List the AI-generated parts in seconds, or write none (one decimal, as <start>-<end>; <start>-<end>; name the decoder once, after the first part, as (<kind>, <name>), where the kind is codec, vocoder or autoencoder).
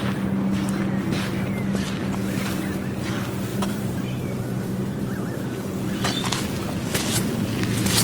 3.5-5.7 (vocoder, BigVGAN v2)